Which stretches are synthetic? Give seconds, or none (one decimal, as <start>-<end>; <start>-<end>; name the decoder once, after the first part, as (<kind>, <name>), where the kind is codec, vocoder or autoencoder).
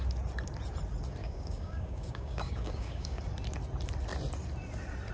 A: 1.2-3.2 (codec, DAC)